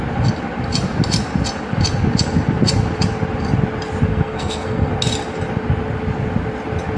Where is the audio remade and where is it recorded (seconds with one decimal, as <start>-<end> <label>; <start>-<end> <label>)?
0.0-4.1 recorded; 4.1-4.9 remade; 4.9-7.0 recorded

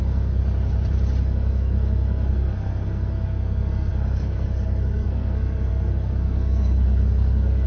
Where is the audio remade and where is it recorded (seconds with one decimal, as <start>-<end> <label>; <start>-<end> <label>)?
0.0-0.4 remade; 0.4-1.2 recorded; 1.2-7.7 remade